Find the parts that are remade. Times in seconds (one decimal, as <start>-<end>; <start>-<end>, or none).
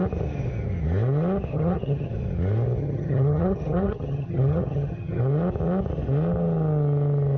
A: 1.5-2.1; 2.8-5.2